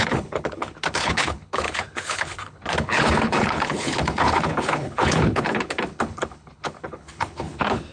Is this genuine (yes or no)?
no